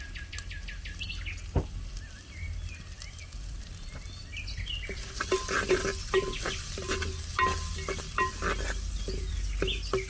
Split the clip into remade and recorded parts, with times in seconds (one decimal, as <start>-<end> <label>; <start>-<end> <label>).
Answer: 0.0-10.1 recorded